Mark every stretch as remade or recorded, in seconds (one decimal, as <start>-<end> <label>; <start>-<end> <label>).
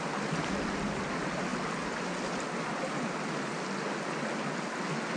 0.0-5.2 recorded